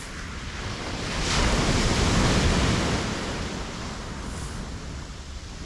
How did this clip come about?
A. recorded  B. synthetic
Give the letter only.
A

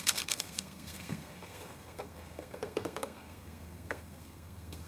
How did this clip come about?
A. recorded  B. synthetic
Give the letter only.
B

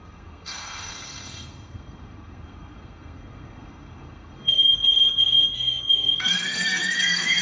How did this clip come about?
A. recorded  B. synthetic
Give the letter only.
B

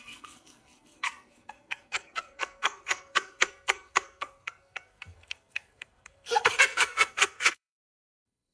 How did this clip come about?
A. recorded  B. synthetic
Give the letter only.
B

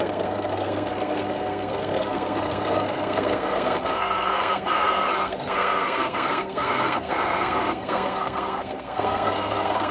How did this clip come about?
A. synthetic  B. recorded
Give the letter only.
A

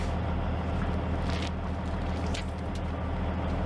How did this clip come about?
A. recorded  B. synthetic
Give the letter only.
A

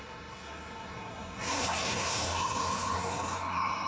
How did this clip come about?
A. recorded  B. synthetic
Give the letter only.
B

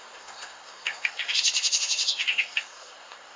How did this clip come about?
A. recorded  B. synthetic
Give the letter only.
B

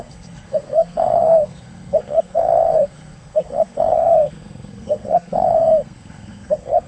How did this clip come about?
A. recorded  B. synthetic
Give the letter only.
B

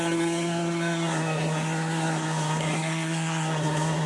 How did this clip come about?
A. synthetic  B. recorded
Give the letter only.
A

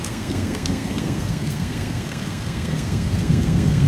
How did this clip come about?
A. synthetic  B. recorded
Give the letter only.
A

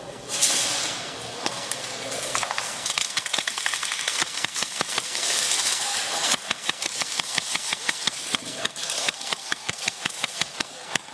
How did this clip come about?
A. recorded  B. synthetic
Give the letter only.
B